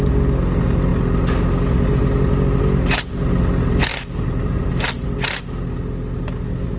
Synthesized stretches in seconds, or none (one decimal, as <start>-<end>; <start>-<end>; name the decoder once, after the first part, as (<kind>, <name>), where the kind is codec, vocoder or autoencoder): 3.9-4.6 (vocoder, BigVGAN v2)